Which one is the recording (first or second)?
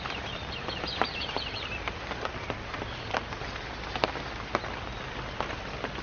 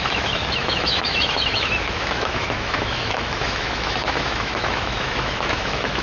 first